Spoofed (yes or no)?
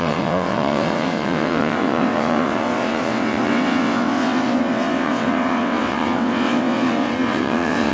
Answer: yes